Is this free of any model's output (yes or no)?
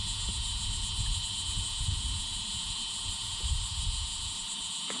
no